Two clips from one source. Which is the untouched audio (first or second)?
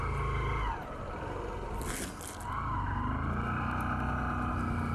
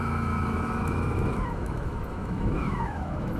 first